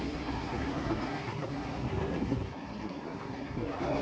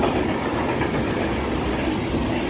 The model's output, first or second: first